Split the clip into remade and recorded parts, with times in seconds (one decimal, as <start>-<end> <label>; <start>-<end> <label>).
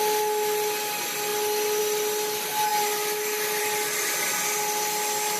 0.0-5.4 recorded